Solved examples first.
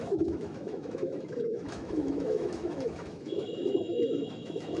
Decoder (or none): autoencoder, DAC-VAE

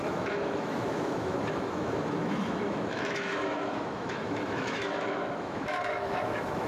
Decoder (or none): autoencoder, DAC-VAE